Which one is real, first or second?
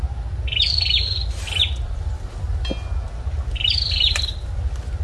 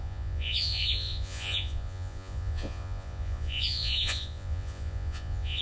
first